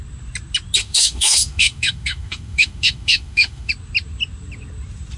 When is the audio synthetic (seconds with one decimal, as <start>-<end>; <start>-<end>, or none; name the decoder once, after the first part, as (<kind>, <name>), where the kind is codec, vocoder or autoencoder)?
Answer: 0.8-3.7 (autoencoder, DAC-VAE)